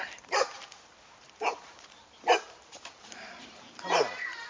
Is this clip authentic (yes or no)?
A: no